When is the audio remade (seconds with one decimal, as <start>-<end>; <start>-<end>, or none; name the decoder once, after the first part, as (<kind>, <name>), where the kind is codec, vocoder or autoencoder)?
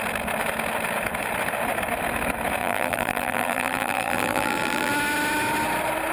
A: 2.6-4.9 (vocoder, BigVGAN v2)